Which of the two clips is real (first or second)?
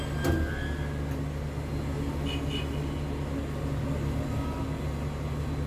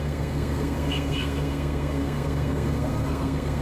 first